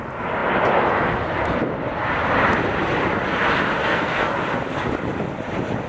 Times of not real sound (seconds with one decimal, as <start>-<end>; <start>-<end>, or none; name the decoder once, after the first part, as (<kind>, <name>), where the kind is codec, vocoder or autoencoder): 3.8-4.3 (codec, SNAC)